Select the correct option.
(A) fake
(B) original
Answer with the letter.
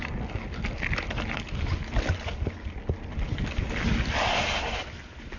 B